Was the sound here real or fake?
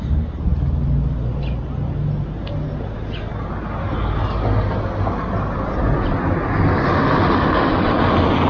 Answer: real